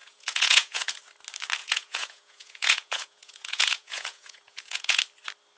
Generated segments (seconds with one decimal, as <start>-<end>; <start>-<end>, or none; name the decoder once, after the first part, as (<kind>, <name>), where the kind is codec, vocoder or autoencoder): 0.0-1.0 (vocoder, Vocos); 1.6-5.0